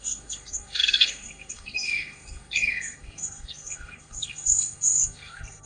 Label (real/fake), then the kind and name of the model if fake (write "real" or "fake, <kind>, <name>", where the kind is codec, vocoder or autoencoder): fake, codec, SNAC